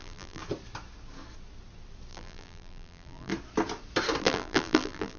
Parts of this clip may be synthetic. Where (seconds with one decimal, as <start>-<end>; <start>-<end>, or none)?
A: 0.0-0.4; 2.1-3.3; 4.2-5.2